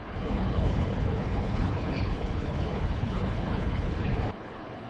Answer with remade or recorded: remade